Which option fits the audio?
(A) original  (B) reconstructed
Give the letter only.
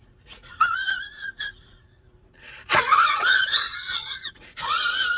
B